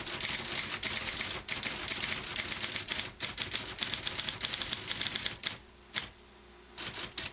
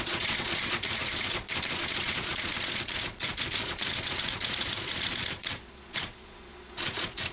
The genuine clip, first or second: first